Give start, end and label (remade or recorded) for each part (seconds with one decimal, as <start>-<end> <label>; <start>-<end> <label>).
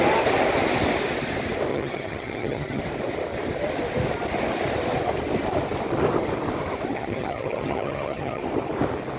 0.0-1.7 recorded; 1.7-2.8 remade; 2.8-6.9 recorded; 6.9-8.4 remade; 8.4-9.2 recorded